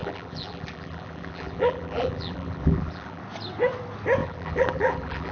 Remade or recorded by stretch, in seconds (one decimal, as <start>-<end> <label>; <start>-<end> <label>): 0.0-3.2 remade; 3.2-4.2 recorded; 4.2-5.3 remade